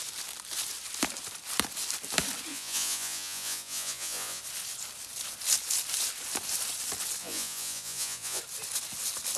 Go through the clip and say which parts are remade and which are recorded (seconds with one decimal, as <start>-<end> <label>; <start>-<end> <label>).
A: 0.0-2.5 recorded; 2.5-4.4 remade; 4.4-7.2 recorded; 7.2-8.4 remade; 8.4-9.4 recorded